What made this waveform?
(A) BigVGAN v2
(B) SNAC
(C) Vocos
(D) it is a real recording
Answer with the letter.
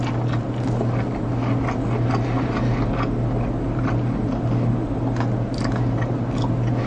D